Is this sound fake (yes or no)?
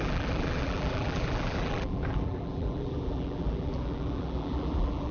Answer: yes